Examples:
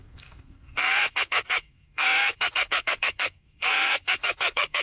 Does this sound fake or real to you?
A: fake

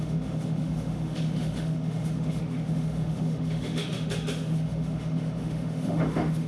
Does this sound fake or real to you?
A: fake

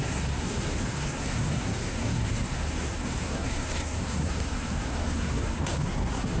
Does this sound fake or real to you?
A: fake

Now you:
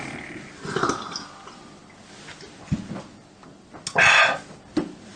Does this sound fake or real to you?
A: real